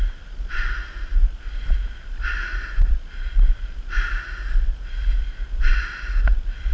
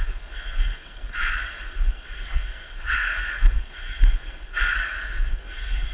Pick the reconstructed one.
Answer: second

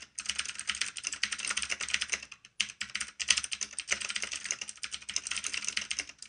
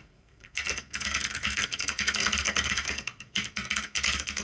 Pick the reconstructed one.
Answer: second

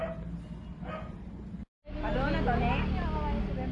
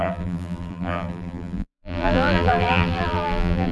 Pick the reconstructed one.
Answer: second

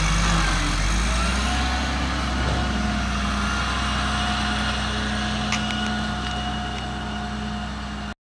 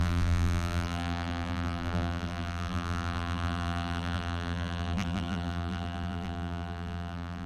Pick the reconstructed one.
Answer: second